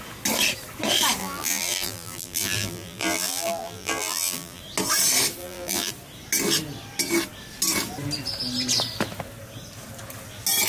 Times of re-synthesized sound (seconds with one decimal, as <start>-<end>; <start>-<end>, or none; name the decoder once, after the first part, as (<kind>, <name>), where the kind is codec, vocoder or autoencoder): 1.2-4.6 (vocoder, BigVGAN v2); 5.4-5.9